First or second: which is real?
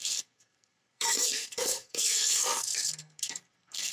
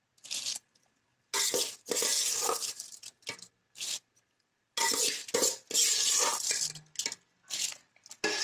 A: second